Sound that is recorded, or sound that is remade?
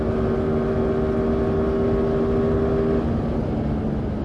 recorded